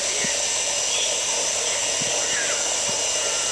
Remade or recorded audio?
recorded